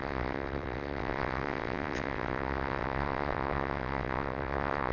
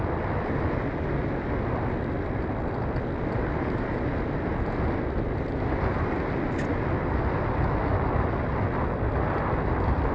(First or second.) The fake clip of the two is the first